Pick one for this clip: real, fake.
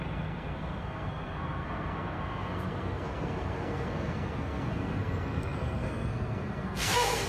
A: fake